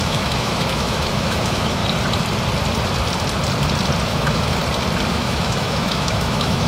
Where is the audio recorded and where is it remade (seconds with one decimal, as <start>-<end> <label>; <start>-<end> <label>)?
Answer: 0.0-1.8 remade; 1.8-4.0 recorded; 4.0-4.6 remade; 4.6-5.1 recorded; 5.1-6.7 remade